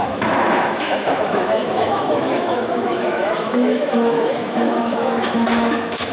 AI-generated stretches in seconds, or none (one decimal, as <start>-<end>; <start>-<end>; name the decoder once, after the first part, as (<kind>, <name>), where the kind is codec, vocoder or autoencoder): 0.0-6.1 (autoencoder, DAC-VAE)